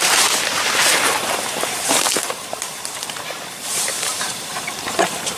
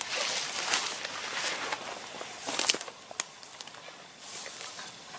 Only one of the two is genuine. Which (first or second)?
second